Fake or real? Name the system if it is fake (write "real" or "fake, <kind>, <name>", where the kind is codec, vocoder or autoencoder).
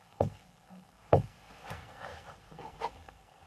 fake, codec, SNAC